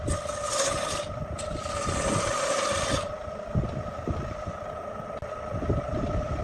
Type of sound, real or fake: real